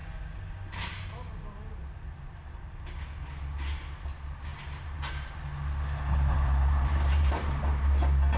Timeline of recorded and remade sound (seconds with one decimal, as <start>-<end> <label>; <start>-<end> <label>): 0.0-4.5 recorded; 4.5-5.4 remade; 5.4-6.3 recorded; 6.3-7.6 remade; 7.6-8.4 recorded